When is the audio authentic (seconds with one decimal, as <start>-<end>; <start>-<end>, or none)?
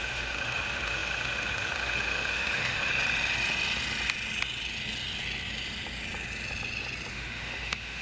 2.9-7.1